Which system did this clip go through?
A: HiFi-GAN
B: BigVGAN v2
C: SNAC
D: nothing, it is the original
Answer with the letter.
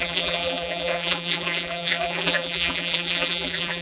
B